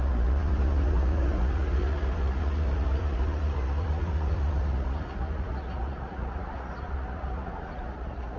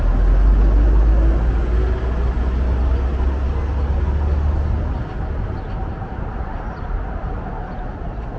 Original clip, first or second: second